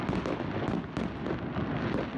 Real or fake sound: real